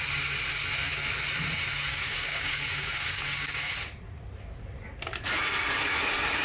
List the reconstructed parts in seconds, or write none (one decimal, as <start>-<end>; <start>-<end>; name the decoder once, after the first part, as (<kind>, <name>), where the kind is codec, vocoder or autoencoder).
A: 1.9-3.8 (codec, DAC)